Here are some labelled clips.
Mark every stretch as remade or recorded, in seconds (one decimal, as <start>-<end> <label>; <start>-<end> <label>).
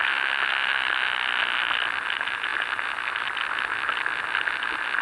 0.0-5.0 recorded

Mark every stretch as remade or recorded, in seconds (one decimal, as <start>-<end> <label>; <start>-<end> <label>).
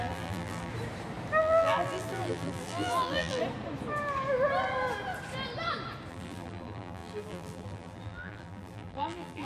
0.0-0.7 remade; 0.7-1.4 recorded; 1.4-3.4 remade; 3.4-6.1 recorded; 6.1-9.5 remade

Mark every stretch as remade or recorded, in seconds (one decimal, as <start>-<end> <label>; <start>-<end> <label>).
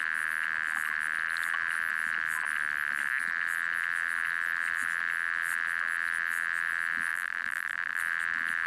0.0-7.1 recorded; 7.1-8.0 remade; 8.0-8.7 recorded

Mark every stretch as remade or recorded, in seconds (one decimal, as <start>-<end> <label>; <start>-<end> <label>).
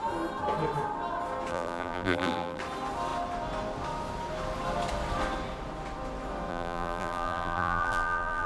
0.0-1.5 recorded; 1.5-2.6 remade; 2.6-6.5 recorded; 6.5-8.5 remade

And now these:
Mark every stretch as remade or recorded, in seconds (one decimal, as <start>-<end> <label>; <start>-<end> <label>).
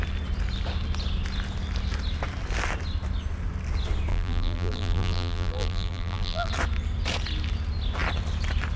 0.0-4.1 recorded; 4.1-6.5 remade; 6.5-8.8 recorded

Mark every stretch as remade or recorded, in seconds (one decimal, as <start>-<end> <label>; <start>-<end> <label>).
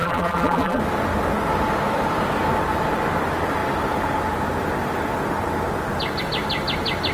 0.0-0.8 remade; 0.8-7.1 recorded